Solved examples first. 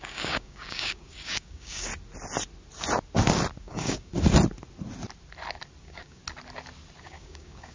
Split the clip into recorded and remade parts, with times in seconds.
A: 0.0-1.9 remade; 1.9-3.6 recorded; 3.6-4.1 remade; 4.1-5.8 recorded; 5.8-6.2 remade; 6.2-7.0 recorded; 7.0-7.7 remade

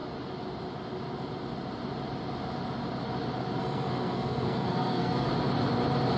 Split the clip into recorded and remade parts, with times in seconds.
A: 0.0-3.6 recorded; 3.6-5.3 remade; 5.3-6.2 recorded

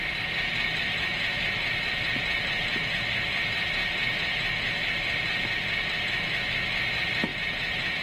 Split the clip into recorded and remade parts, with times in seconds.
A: 0.0-8.0 recorded

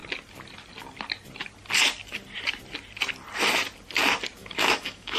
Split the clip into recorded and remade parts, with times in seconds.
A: 0.0-4.4 recorded; 4.4-5.2 remade

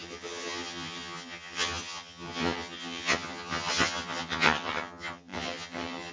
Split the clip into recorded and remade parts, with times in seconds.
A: 0.0-6.1 remade

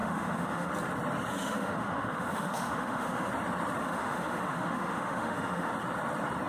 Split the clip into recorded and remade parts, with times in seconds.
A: 0.0-0.7 remade; 0.7-1.3 recorded; 1.3-3.3 remade; 3.3-3.8 recorded; 3.8-5.7 remade; 5.7-6.5 recorded

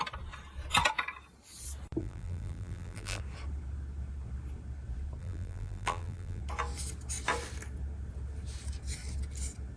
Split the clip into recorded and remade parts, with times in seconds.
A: 0.0-2.0 recorded; 2.0-3.2 remade; 3.2-5.2 recorded; 5.2-6.4 remade; 6.4-9.8 recorded

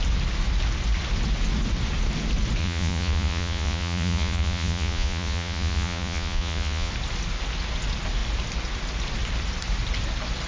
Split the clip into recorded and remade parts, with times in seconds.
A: 0.0-2.6 recorded; 2.6-6.9 remade; 6.9-10.5 recorded